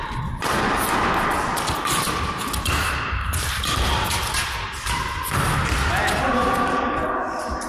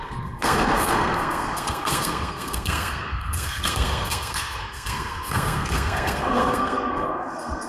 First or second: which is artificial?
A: second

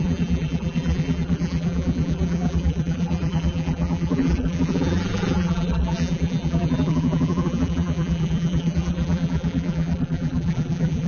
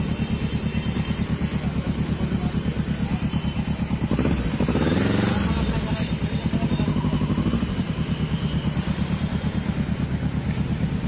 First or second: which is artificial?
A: first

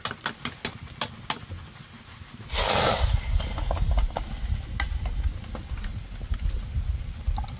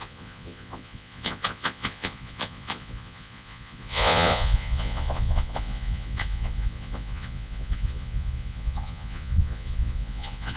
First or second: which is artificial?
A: second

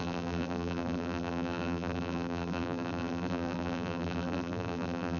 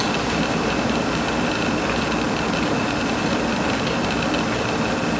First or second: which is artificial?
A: first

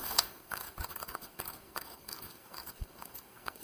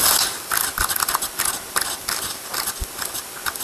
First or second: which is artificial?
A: first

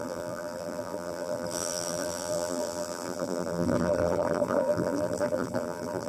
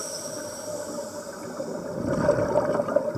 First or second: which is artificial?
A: first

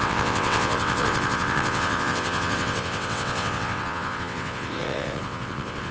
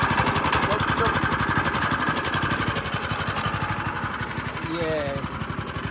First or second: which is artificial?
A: first